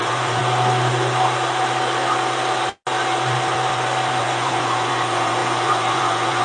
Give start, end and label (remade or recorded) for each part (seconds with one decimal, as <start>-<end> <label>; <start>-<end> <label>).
0.0-0.4 remade; 0.4-4.2 recorded; 4.2-6.4 remade